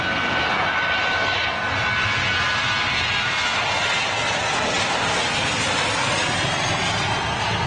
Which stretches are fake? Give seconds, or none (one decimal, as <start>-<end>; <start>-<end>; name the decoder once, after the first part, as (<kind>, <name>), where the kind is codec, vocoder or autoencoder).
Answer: none